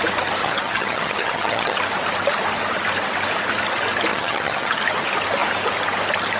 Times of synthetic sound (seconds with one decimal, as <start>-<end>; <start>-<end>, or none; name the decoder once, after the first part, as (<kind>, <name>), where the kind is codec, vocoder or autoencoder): 0.4-1.8 (vocoder, HiFi-GAN); 4.1-4.8